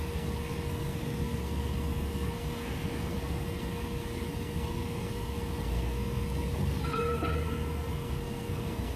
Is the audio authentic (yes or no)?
no